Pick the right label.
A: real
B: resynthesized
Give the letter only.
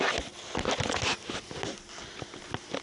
A